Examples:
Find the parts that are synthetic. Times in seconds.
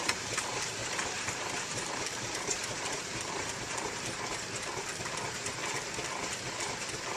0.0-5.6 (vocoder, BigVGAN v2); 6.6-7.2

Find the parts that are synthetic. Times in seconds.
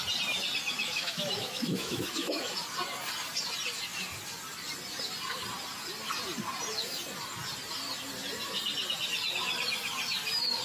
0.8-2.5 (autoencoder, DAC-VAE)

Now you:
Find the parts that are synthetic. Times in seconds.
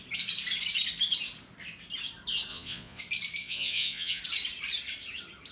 2.5-3.0 (vocoder, Vocos); 3.4-4.2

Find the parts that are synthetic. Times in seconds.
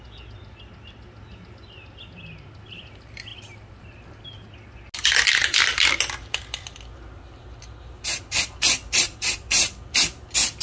none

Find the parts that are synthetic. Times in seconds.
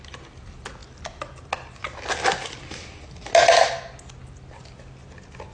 none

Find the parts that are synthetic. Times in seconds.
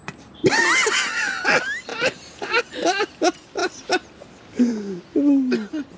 0.0-0.6 (vocoder, BigVGAN v2); 1.9-2.6; 3.6-4.7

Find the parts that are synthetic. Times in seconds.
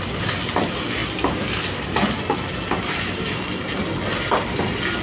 none